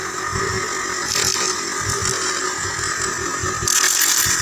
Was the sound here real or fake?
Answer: real